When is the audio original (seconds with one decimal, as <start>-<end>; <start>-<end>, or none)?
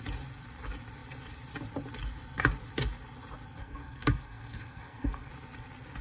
0.0-3.6; 5.3-6.0